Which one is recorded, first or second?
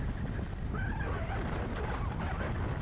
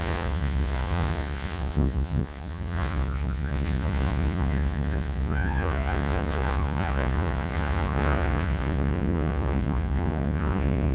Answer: first